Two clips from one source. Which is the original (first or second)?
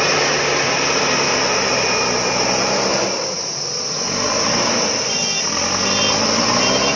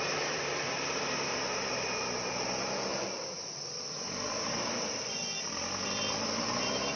first